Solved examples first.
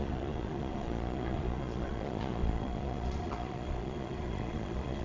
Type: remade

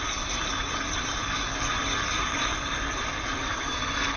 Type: recorded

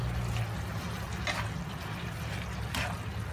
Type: recorded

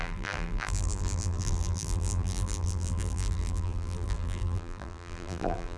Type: remade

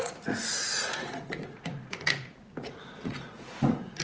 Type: remade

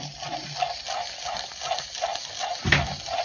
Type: recorded